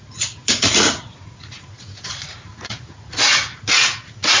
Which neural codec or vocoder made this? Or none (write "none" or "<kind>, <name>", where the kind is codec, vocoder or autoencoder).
vocoder, Vocos